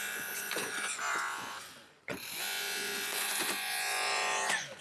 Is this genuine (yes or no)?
no